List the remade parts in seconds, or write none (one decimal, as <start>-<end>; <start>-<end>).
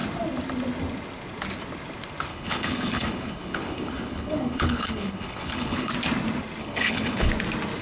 2.3-5.9; 6.6-7.3